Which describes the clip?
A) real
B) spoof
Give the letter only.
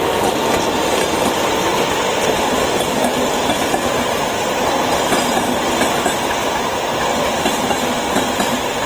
A